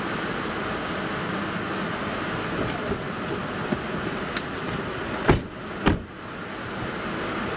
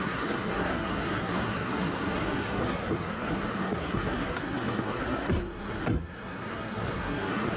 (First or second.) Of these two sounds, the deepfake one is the second